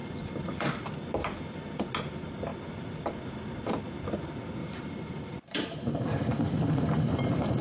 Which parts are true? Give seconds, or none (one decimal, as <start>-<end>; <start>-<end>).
0.9-4.6